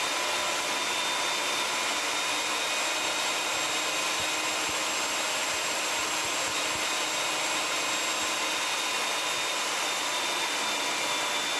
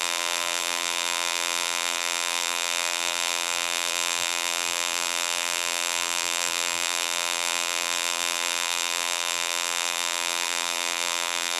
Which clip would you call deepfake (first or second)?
second